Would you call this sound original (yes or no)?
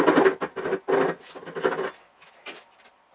yes